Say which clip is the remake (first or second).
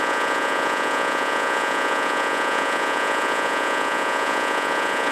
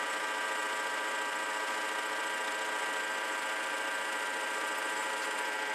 first